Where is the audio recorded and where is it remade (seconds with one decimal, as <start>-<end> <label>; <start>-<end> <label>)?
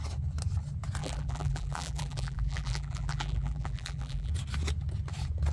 0.0-1.0 recorded; 1.0-4.3 remade; 4.3-5.5 recorded